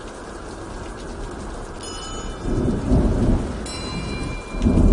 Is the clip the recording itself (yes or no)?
yes